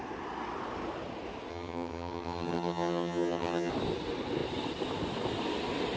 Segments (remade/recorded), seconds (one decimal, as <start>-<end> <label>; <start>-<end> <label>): 0.0-1.5 recorded; 1.5-3.7 remade; 3.7-6.0 recorded